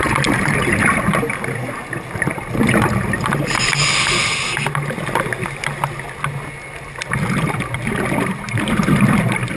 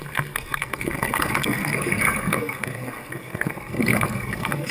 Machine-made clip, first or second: second